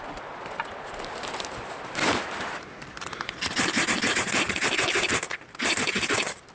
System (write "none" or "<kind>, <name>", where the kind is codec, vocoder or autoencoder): none